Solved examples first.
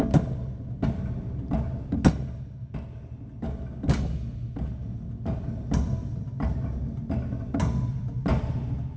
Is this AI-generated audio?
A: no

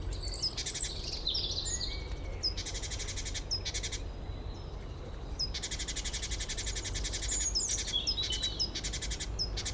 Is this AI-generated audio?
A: no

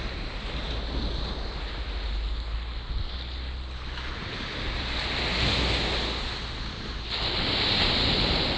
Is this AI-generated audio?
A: no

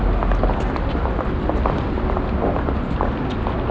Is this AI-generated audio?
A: no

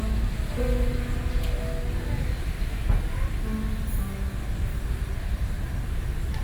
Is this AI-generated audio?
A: no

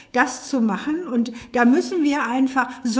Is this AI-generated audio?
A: yes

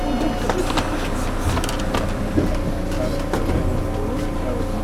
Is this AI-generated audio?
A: no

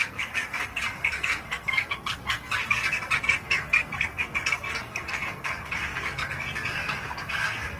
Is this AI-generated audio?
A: yes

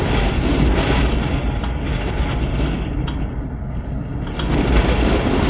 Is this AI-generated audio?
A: no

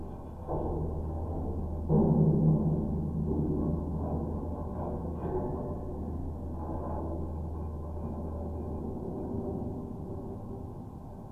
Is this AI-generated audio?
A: no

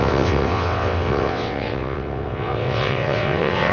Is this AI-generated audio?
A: yes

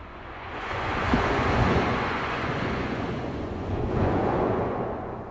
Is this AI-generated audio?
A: yes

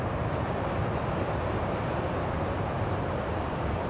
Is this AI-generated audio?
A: yes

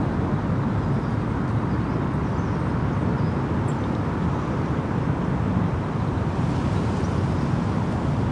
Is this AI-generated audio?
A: no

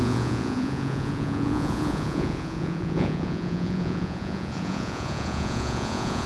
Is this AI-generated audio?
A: yes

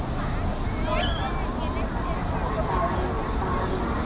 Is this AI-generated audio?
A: no